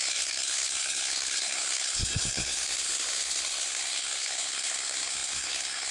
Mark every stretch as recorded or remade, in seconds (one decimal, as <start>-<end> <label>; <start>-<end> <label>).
0.0-5.9 remade